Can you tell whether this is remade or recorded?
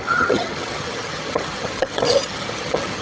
remade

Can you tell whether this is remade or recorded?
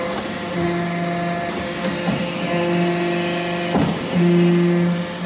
recorded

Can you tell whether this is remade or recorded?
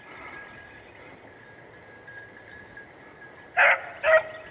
recorded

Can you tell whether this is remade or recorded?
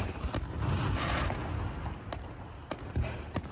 recorded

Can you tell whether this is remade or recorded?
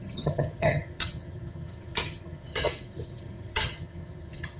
remade